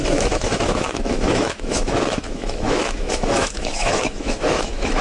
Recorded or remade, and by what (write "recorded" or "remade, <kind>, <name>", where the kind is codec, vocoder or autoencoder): remade, autoencoder, DAC-VAE